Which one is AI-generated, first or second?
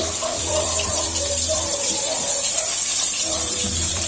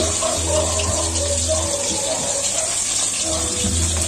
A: first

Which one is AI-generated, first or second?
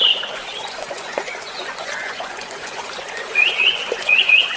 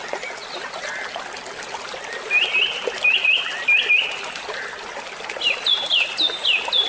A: first